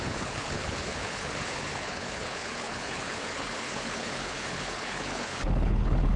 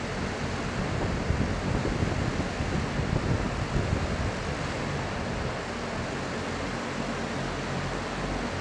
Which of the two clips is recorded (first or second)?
second